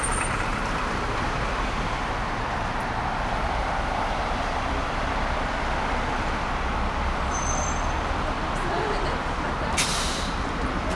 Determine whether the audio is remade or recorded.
remade